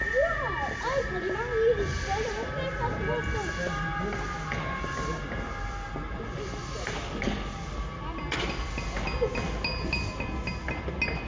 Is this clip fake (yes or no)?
no